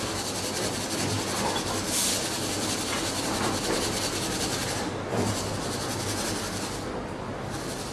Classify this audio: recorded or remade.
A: recorded